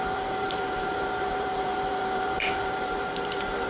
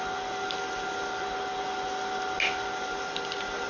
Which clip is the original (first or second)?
second